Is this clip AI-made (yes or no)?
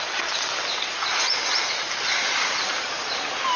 no